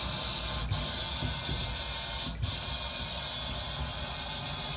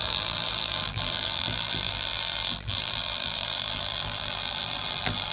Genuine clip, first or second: first